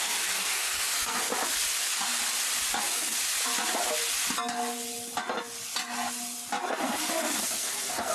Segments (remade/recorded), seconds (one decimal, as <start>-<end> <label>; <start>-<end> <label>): 0.0-1.3 remade; 1.3-2.8 recorded; 2.8-3.2 remade; 3.2-6.8 recorded; 6.8-8.1 remade